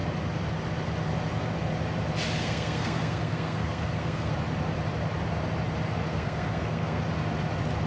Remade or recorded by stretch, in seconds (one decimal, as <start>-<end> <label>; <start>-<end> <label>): 0.0-2.4 recorded; 2.4-4.3 remade; 4.3-6.1 recorded; 6.1-7.0 remade; 7.0-7.9 recorded